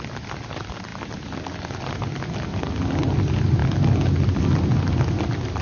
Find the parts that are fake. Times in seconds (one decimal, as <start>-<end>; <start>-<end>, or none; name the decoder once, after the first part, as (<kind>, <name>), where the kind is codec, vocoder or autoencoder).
none